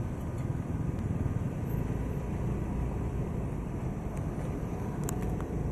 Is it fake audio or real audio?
fake